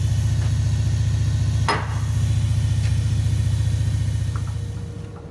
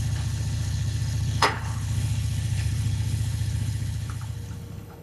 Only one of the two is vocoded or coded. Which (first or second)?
second